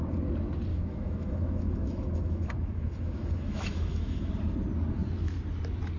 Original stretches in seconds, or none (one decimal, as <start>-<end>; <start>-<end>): 0.0-0.7; 4.3-6.0